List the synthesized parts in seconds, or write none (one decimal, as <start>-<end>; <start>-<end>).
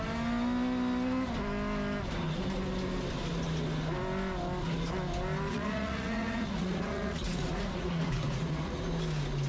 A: 5.5-8.8